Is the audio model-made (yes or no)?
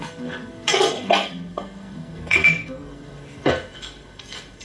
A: yes